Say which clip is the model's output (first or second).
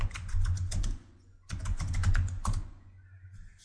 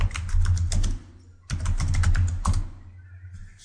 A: first